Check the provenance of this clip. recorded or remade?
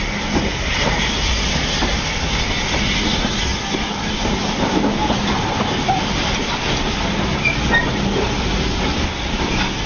recorded